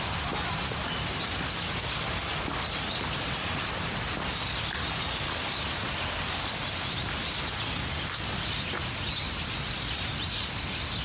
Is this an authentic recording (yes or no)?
yes